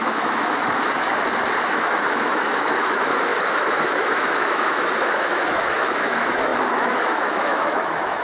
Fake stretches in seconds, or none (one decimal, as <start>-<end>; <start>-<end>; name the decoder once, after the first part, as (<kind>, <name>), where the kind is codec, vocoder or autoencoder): 0.0-0.6 (autoencoder, DAC-VAE); 1.7-8.2